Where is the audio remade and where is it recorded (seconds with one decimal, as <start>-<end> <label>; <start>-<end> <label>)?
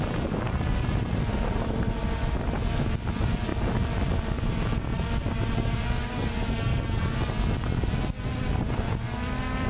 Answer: 0.0-9.7 recorded